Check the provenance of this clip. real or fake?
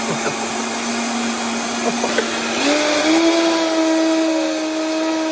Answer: real